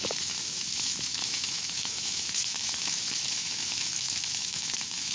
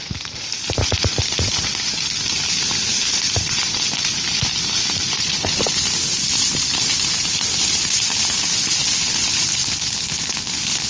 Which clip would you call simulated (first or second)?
first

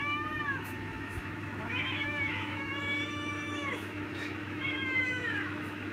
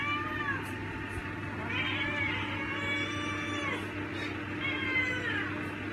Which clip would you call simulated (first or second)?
first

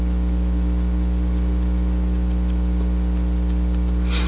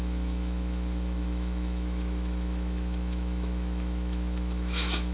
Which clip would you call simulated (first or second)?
second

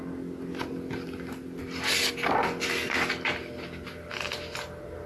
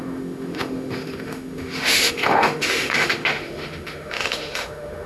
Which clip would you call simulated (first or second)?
second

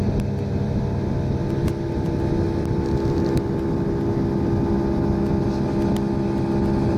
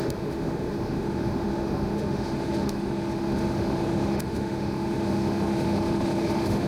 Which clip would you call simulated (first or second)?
second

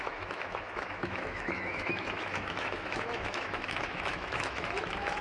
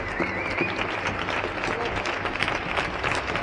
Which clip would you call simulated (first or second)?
first